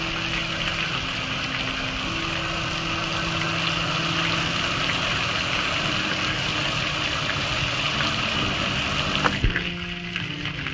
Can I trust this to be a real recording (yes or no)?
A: yes